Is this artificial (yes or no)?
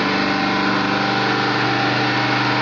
no